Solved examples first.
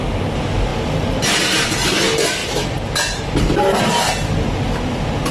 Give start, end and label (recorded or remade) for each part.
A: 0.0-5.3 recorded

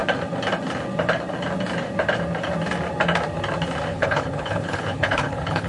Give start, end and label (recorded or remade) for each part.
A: 0.0-3.9 recorded; 3.9-5.7 remade

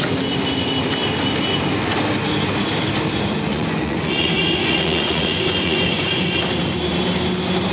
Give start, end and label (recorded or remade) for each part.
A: 0.0-3.5 recorded; 3.5-6.3 remade; 6.3-7.7 recorded